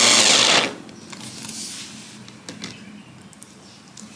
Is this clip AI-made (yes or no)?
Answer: no